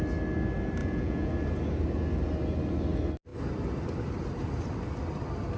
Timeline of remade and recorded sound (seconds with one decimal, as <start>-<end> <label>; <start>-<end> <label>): 0.0-0.8 recorded; 0.8-1.3 remade; 1.3-5.6 recorded